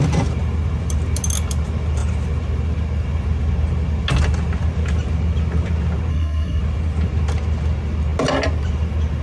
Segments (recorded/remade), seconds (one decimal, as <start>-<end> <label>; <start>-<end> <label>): 0.0-6.1 recorded; 6.1-6.6 remade; 6.6-9.2 recorded